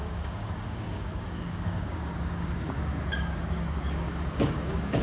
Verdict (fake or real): fake